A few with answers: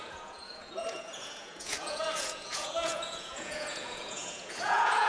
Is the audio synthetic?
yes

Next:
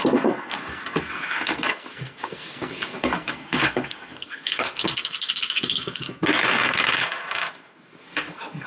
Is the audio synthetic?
yes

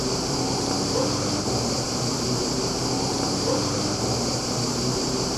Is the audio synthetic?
yes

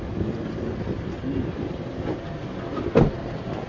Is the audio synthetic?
no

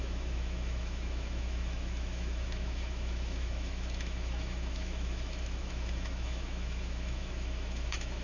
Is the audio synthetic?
yes